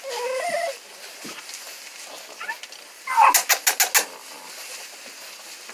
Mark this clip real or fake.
real